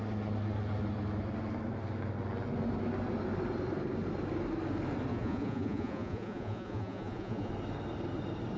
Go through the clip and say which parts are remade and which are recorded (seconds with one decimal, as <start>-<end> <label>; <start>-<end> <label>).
0.0-5.1 recorded; 5.1-7.5 remade; 7.5-8.6 recorded